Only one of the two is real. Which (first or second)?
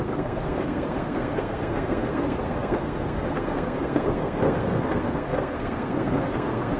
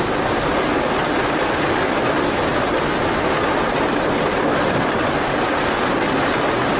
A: second